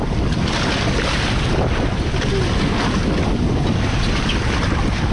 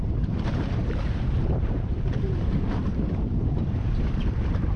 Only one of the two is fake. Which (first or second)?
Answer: second